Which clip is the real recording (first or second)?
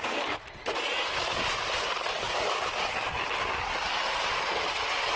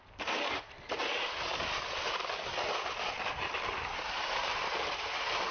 first